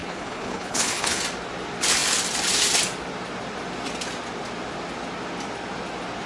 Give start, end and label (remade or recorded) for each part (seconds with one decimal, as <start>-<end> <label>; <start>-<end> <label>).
0.0-1.2 remade; 1.2-6.3 recorded